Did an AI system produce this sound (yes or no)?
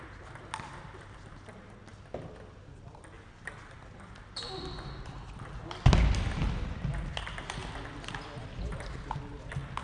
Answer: no